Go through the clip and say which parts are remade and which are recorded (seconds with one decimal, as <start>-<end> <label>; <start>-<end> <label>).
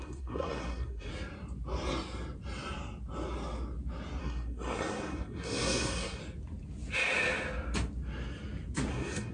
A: 0.0-1.1 remade; 1.1-4.2 recorded; 4.2-6.2 remade; 6.2-8.9 recorded; 8.9-9.3 remade